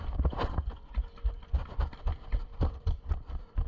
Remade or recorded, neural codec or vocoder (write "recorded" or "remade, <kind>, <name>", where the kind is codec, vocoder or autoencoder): recorded